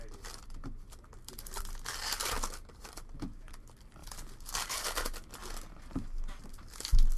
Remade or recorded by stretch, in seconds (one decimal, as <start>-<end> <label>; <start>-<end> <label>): 0.0-7.2 recorded

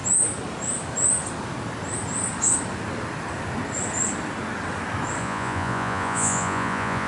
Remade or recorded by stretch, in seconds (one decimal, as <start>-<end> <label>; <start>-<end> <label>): 0.0-5.2 recorded; 5.2-7.1 remade